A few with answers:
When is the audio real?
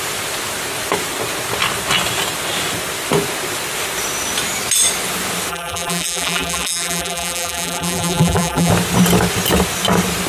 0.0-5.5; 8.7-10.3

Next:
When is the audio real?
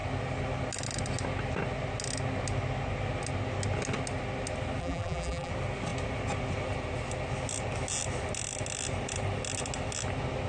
0.0-4.8; 5.5-10.5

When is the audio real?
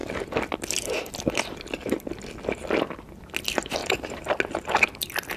0.0-3.8; 4.3-5.4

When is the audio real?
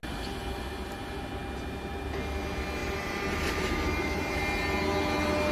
0.0-2.8; 4.4-5.5